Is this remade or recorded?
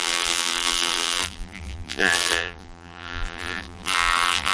remade